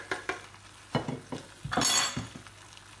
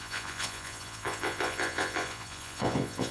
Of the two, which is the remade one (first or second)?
second